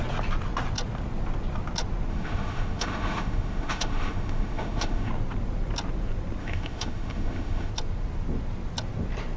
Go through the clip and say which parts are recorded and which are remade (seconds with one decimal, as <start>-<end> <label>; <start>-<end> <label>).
0.0-2.1 recorded; 2.1-5.1 remade; 5.1-6.4 recorded; 6.4-7.7 remade; 7.7-9.4 recorded